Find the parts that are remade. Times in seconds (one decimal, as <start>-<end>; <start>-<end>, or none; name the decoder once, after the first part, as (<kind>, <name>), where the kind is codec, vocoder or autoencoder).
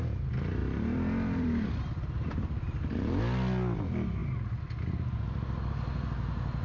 0.6-3.2 (vocoder, BigVGAN v2)